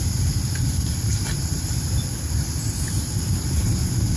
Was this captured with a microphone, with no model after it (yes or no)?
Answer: no